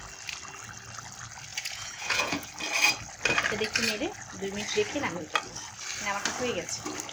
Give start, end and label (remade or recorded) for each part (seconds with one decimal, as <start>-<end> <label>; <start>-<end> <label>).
0.0-1.5 recorded; 1.5-2.5 remade; 2.5-7.1 recorded